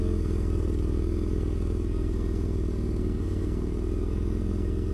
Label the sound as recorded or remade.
remade